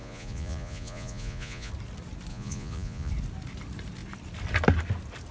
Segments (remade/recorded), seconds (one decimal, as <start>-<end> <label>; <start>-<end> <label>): 0.0-1.7 remade; 1.7-2.3 recorded; 2.3-3.1 remade; 3.1-5.3 recorded